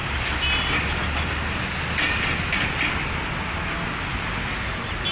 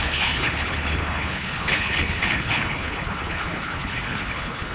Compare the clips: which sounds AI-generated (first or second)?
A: second